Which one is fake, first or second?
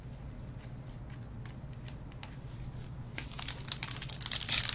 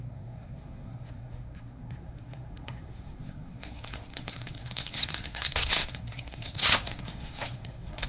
second